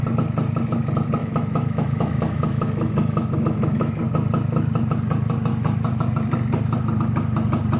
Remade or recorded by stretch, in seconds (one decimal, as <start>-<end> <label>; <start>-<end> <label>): 0.0-1.2 recorded; 1.2-4.0 remade; 4.0-7.8 recorded